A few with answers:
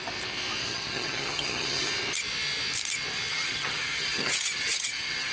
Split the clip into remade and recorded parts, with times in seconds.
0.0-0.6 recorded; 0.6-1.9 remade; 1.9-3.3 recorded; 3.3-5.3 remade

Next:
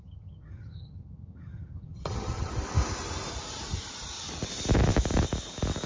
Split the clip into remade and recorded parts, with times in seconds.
0.0-2.5 remade; 2.5-5.9 recorded

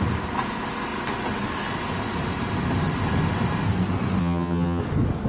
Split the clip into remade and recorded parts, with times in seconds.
0.0-4.2 recorded; 4.2-4.8 remade; 4.8-5.3 recorded